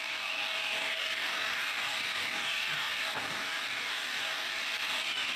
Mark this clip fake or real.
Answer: fake